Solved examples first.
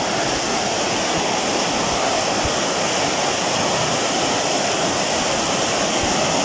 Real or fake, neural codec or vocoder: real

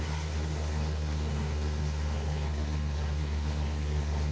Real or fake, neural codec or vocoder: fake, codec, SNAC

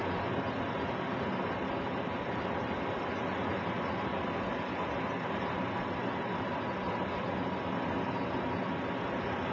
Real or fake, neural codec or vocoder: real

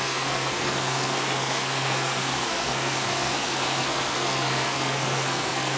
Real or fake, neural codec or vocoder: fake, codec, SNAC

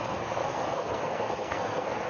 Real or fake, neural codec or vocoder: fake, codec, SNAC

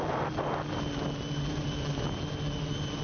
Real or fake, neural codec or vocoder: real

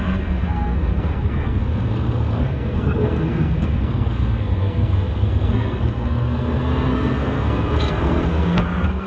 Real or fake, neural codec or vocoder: fake, codec, SNAC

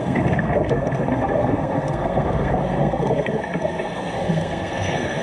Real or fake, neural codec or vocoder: fake, codec, SNAC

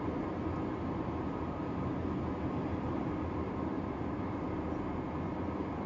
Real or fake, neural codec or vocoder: real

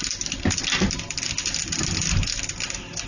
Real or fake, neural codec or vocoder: real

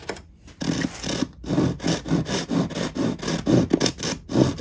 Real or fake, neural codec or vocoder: real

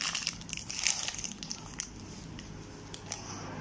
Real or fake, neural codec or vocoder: real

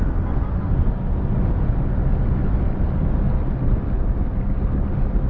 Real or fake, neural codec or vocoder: real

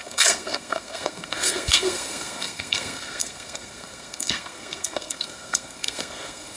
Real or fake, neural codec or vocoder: fake, codec, SNAC